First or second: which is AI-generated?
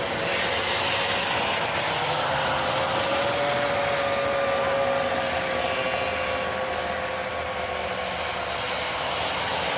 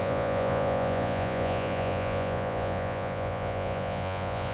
second